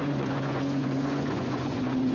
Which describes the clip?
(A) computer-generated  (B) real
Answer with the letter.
A